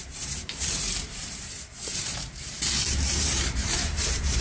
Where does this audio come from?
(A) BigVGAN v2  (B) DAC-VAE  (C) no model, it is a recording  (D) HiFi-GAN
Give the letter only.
A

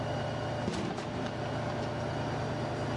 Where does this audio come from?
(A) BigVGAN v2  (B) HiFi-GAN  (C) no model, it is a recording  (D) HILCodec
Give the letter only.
C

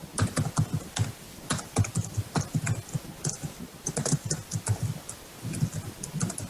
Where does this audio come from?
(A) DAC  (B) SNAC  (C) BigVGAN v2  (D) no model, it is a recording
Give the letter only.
D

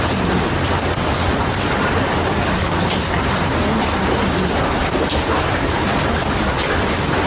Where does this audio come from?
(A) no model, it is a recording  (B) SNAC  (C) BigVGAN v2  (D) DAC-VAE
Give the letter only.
A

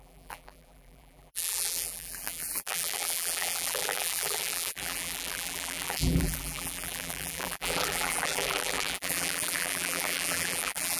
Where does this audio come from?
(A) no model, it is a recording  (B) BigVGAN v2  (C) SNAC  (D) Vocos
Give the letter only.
B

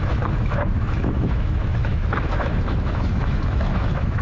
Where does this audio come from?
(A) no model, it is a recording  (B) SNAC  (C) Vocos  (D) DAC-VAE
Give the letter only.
D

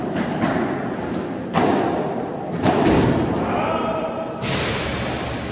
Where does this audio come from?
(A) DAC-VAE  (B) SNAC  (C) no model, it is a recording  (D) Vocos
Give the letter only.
C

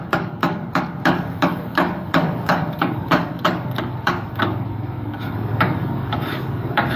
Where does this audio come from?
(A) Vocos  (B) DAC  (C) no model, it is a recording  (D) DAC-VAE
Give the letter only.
B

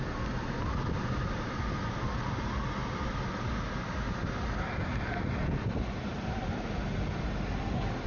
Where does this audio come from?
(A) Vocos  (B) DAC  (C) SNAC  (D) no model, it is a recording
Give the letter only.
D